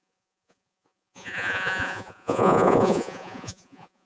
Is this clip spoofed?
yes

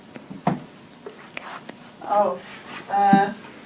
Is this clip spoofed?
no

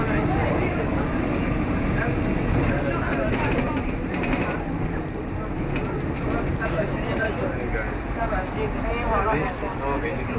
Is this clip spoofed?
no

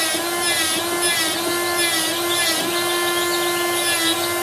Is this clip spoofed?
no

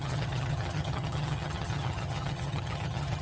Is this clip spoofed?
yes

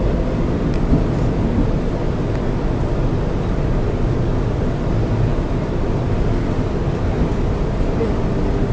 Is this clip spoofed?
no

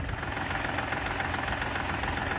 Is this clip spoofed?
no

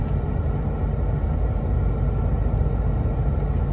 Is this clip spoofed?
no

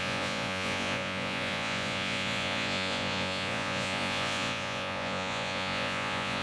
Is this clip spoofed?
yes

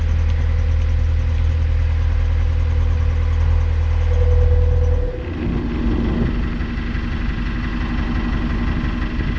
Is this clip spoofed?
no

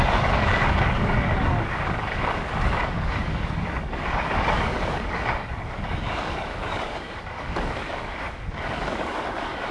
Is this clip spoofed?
yes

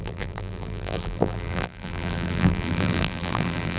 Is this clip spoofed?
yes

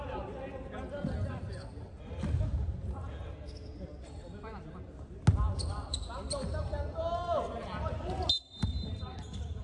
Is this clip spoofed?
no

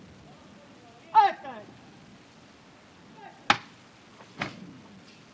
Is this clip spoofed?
no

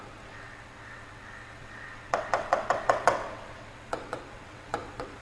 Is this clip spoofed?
yes